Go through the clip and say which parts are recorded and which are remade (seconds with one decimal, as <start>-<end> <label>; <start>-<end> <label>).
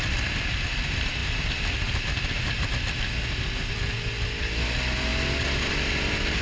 0.0-6.4 recorded